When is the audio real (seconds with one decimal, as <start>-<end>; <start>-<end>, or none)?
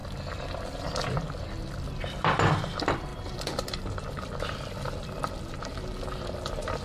0.0-2.0